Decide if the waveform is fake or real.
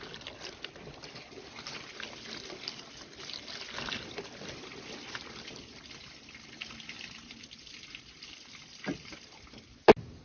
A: real